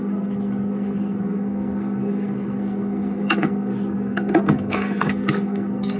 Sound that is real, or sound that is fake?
fake